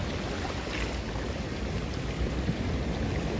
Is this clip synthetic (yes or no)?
no